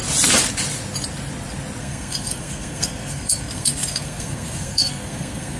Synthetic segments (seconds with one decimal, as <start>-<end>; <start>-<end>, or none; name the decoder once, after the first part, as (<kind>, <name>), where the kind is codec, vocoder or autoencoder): 1.8-5.6 (codec, SNAC)